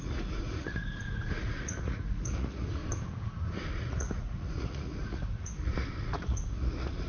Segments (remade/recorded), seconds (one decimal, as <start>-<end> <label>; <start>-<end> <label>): 0.0-2.8 remade; 2.8-3.7 recorded; 3.7-7.1 remade